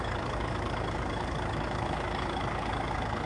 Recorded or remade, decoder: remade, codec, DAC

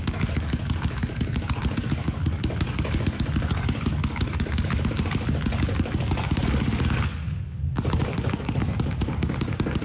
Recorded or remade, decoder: remade, codec, DAC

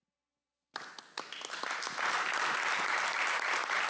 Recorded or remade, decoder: recorded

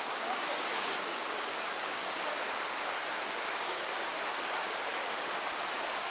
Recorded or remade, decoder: remade, codec, DAC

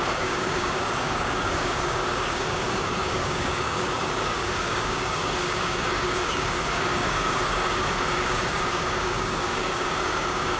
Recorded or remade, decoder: remade, codec, DAC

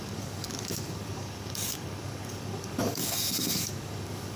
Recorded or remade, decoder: remade, codec, DAC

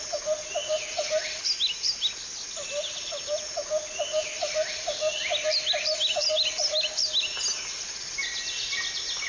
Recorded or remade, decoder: recorded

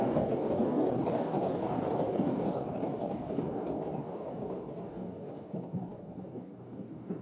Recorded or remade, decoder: remade, codec, DAC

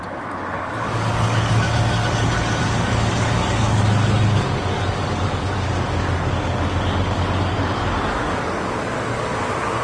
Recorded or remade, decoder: remade, codec, DAC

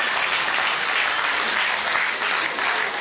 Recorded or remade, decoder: recorded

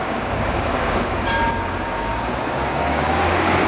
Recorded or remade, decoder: remade, codec, DAC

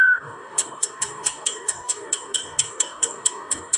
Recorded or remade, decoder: remade, codec, DAC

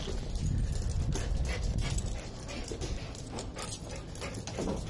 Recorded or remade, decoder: recorded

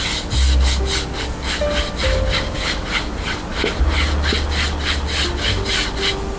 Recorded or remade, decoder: recorded